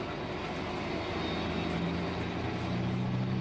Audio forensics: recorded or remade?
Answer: recorded